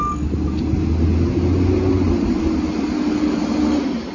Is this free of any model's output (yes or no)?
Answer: yes